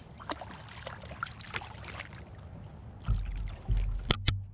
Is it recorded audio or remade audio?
recorded